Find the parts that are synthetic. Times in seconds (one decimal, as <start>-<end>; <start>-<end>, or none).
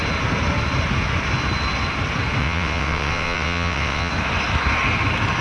2.4-4.1